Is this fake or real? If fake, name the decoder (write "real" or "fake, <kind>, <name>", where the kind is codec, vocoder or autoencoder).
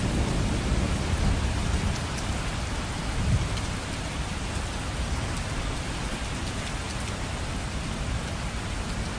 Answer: real